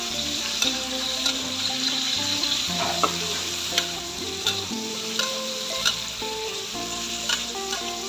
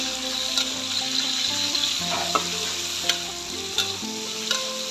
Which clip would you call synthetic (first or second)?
first